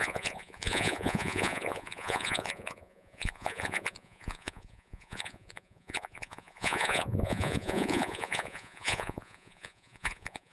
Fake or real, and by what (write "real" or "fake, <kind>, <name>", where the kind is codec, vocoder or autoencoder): fake, vocoder, Vocos